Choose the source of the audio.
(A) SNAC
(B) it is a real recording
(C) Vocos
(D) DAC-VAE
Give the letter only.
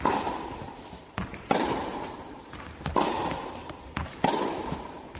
B